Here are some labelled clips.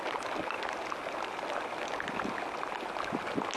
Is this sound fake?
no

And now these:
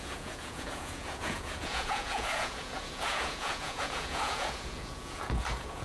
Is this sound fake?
yes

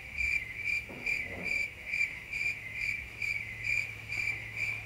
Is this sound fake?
yes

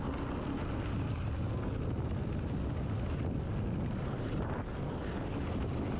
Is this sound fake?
no